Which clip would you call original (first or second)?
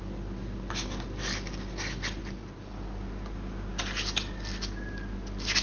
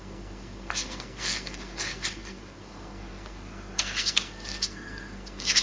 first